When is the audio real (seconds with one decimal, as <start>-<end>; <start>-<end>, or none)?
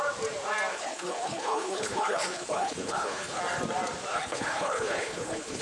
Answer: 0.0-0.7; 3.4-4.1